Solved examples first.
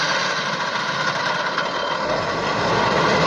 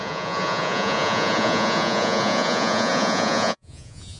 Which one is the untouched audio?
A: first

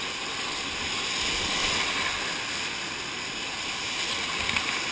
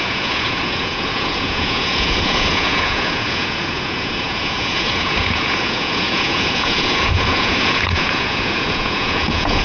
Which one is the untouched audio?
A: first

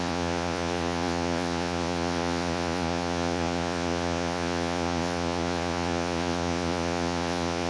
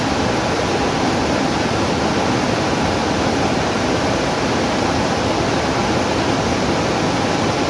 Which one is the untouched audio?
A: second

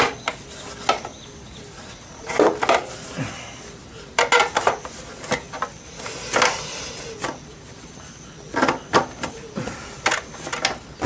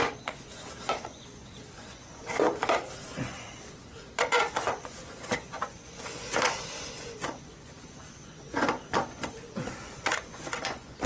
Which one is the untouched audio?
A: first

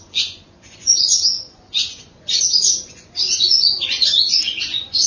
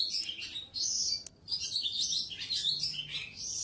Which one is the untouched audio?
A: second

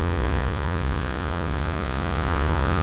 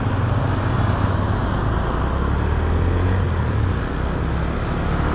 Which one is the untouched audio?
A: second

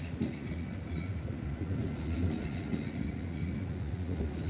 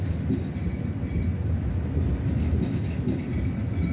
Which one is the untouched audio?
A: second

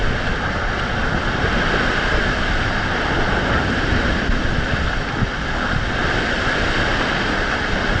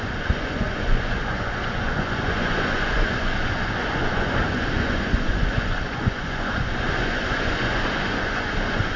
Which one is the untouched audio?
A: first